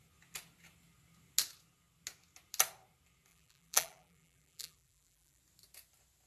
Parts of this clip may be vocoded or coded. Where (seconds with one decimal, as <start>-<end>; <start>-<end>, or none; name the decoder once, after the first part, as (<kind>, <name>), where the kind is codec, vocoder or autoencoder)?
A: 3.3-5.4 (vocoder, BigVGAN v2)